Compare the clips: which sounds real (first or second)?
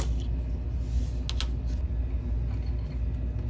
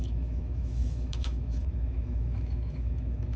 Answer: first